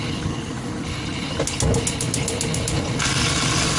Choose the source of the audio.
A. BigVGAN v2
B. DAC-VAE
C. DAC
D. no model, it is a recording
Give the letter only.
D